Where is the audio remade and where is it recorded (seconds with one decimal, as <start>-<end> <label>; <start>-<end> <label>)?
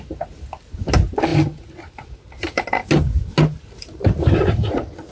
0.0-5.1 recorded